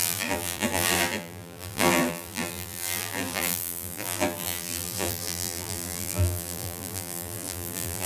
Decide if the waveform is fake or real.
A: fake